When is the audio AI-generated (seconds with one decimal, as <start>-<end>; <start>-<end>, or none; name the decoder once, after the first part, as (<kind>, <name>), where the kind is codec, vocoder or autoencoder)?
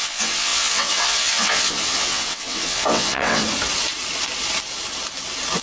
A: 0.0-3.4 (vocoder, WaveNeXt)